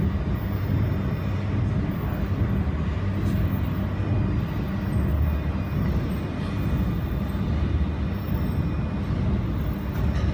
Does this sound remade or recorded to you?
recorded